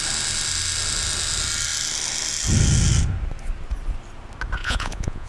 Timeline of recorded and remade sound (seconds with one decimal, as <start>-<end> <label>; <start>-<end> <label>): 0.0-4.6 recorded; 4.6-5.3 remade